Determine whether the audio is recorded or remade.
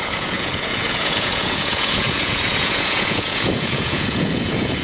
remade